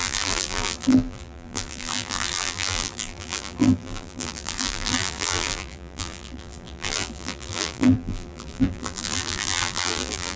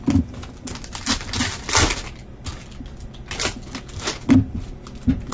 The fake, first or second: first